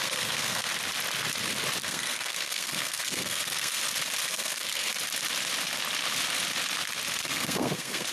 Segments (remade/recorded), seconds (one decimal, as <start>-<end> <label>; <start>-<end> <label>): 0.0-0.7 remade; 0.7-1.8 recorded; 1.8-3.8 remade; 3.8-4.2 recorded; 4.2-4.9 remade; 4.9-7.2 recorded; 7.2-8.1 remade